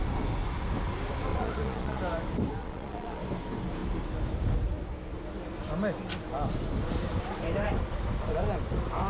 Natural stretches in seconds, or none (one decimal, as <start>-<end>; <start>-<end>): 0.0-1.3; 2.0-2.6; 3.2-9.1